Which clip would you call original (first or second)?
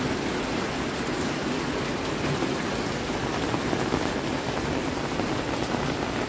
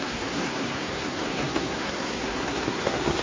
first